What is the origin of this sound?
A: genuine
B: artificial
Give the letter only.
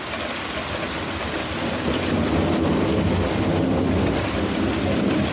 A